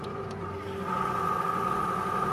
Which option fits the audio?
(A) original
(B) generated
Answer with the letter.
A